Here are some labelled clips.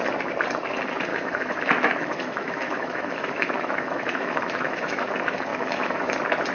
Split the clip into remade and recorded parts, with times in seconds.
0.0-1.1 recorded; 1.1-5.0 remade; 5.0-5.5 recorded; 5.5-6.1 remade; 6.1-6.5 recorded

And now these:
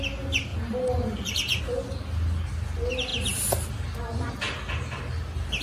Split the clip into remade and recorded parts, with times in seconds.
0.0-0.5 recorded; 0.5-1.6 remade; 1.6-5.6 recorded

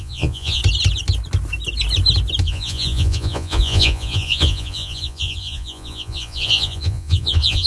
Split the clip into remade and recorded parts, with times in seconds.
0.0-0.6 remade; 0.6-2.4 recorded; 2.4-7.7 remade

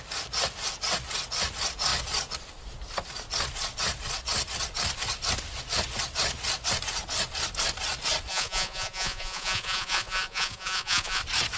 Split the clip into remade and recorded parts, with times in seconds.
0.0-8.3 recorded; 8.3-11.2 remade; 11.2-11.6 recorded